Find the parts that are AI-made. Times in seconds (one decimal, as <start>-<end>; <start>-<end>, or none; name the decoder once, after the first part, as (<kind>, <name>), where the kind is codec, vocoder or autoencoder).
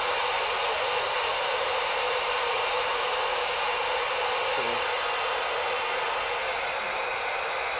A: 1.3-2.8 (vocoder, BigVGAN v2)